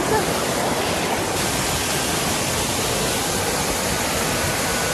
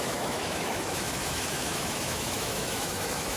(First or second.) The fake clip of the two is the second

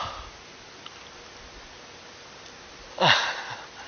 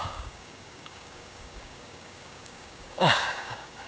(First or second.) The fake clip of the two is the second